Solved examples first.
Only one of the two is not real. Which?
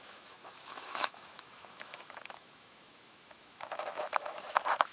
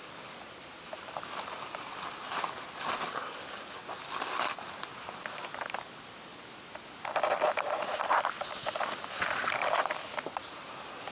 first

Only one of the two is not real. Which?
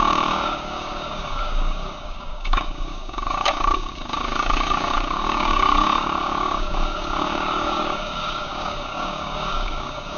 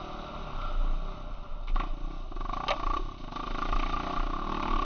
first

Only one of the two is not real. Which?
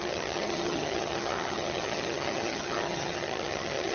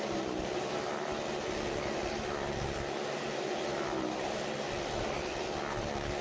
first